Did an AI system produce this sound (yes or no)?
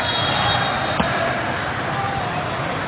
no